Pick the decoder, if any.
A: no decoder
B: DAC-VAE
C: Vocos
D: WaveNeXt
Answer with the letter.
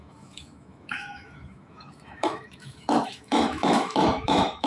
B